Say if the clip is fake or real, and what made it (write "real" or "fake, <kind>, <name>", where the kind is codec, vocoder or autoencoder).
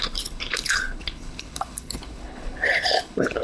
fake, codec, HILCodec